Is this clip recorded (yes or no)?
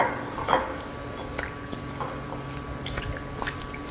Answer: yes